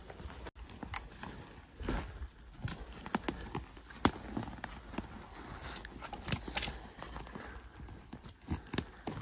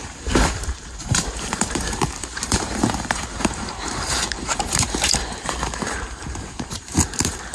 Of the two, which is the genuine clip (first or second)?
first